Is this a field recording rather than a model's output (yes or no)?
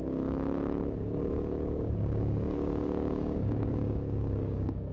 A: no